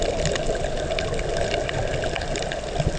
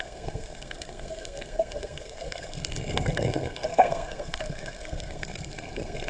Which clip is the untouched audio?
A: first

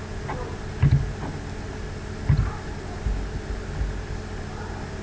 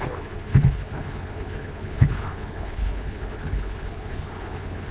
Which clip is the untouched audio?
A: first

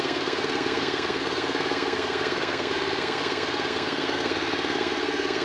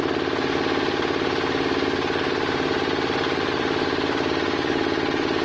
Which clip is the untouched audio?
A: second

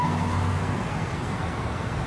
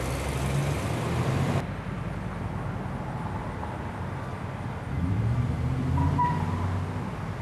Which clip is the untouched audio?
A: second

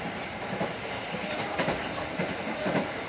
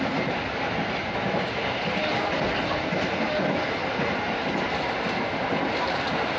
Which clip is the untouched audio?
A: second